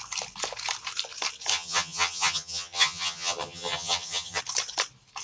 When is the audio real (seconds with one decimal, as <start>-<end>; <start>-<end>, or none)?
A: 0.0-1.5; 4.4-5.2